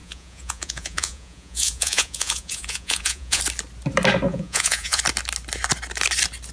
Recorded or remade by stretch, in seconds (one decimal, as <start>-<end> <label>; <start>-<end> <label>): 0.0-3.4 remade; 3.4-4.3 recorded; 4.3-5.0 remade; 5.0-6.5 recorded